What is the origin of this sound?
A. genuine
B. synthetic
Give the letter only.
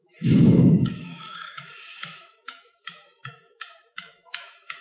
B